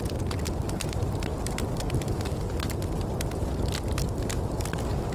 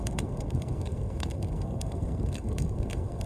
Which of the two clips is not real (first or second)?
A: second